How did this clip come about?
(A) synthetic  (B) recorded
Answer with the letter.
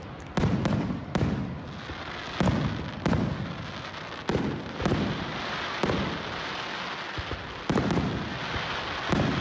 B